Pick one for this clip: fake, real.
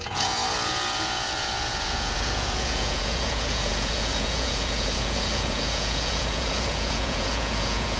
fake